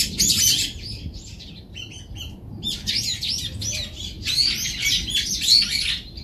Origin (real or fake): real